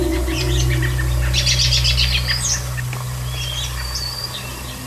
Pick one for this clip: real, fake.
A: real